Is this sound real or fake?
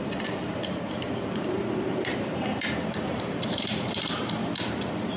fake